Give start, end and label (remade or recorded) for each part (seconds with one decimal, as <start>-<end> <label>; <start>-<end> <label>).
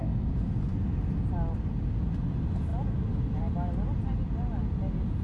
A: 0.0-5.2 recorded